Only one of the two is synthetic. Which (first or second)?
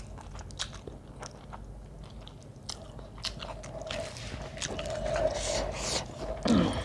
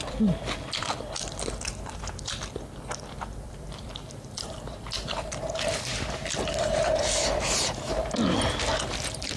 second